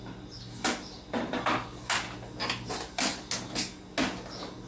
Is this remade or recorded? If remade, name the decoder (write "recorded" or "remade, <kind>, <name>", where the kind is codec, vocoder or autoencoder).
recorded